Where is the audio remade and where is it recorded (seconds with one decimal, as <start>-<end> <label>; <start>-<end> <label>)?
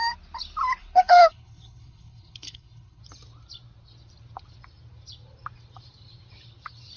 0.0-0.8 recorded; 0.8-3.0 remade; 3.0-7.0 recorded